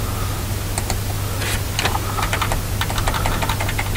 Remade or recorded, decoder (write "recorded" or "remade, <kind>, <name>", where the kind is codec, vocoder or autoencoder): recorded